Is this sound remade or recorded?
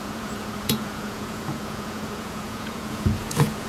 remade